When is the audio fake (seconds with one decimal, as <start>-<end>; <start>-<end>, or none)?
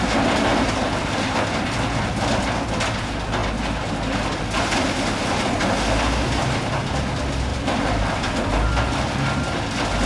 0.5-1.4; 7.5-8.1